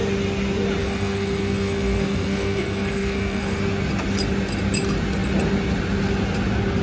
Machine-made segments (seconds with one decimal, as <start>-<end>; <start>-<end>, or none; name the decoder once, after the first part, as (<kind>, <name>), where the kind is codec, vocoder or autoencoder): 0.8-3.6 (codec, SNAC)